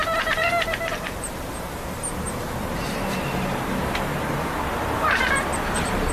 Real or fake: fake